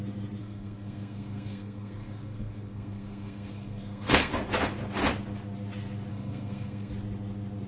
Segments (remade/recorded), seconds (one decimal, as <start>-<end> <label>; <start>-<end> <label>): 0.0-0.4 recorded; 0.4-4.3 remade; 4.3-6.1 recorded; 6.1-6.9 remade; 6.9-7.7 recorded